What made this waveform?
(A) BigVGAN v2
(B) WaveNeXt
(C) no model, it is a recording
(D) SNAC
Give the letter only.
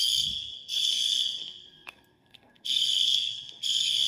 D